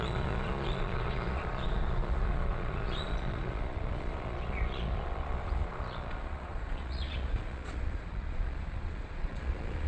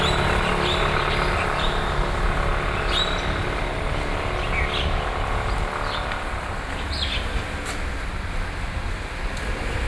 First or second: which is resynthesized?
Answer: first